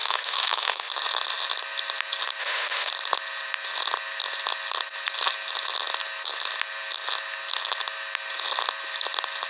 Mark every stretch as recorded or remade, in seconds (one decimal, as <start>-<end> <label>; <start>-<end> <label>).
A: 0.0-0.9 remade; 0.9-2.4 recorded; 2.4-2.9 remade; 2.9-9.5 recorded